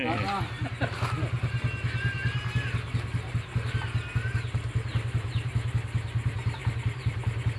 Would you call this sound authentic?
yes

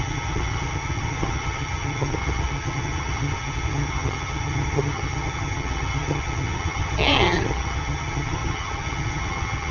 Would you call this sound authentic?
no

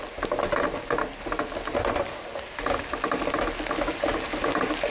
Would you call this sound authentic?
yes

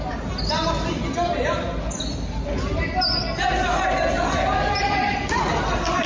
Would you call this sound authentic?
yes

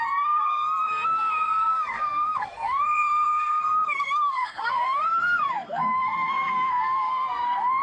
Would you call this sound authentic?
no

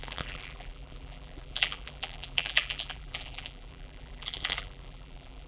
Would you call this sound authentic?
no